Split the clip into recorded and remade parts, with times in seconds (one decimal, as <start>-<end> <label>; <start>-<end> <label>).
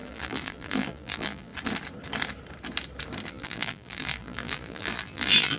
0.0-1.5 remade; 1.5-3.3 recorded; 3.3-5.6 remade